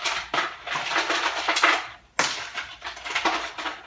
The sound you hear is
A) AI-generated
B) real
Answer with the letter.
B